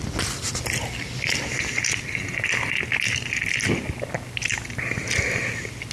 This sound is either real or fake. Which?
real